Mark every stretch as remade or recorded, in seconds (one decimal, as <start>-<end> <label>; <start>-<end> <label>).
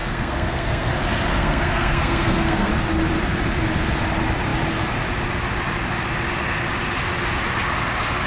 0.0-0.9 remade; 0.9-1.4 recorded; 1.4-2.7 remade; 2.7-8.3 recorded